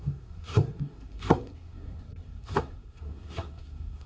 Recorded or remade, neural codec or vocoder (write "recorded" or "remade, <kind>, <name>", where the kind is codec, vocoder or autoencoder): remade, codec, SNAC